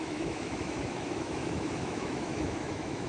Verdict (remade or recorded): remade